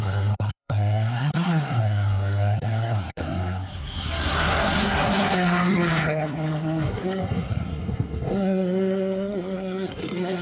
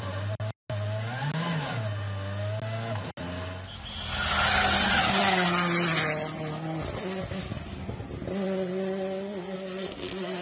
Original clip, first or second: second